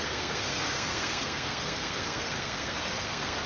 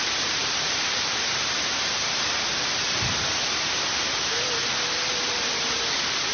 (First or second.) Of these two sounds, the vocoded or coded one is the first